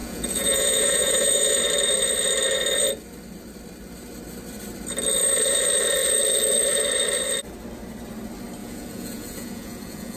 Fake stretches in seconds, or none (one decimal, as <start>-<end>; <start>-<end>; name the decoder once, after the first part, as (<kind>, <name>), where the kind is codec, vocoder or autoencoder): 0.0-1.6 (vocoder, Vocos); 8.6-10.2